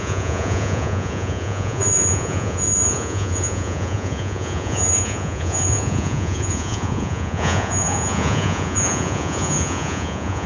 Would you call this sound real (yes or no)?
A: no